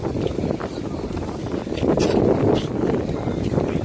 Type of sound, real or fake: real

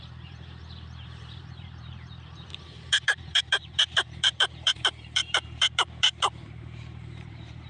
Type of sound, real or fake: fake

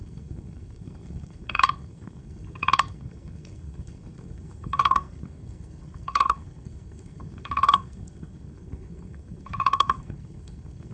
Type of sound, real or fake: fake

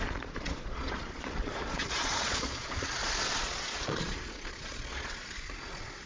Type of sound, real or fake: fake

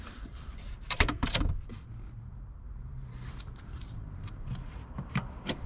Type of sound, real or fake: fake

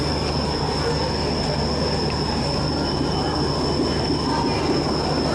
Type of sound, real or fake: real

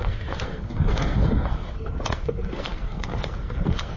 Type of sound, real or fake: fake